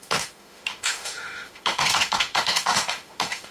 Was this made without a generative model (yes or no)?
no